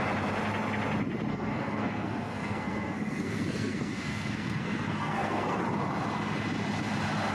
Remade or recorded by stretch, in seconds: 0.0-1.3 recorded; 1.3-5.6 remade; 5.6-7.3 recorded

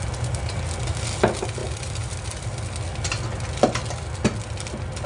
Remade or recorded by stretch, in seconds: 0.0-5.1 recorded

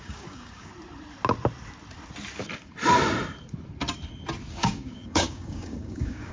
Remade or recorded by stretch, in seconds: 0.0-0.7 remade; 0.7-4.5 recorded; 4.5-6.3 remade

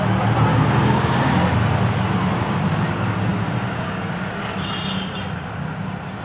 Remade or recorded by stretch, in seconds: 0.0-0.5 recorded; 0.5-1.3 remade; 1.3-3.3 recorded; 3.3-4.1 remade; 4.1-6.2 recorded